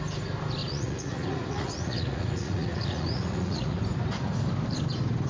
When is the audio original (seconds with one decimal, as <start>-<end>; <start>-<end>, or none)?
0.0-0.6; 3.8-5.3